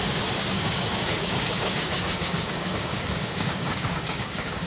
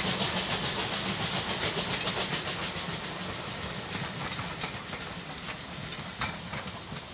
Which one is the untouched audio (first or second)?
second